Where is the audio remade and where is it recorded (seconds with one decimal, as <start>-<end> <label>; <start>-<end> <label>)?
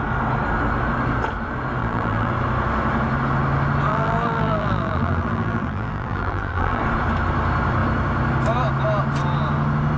0.0-1.8 recorded; 1.8-2.3 remade; 2.3-3.9 recorded; 3.9-6.8 remade; 6.8-10.0 recorded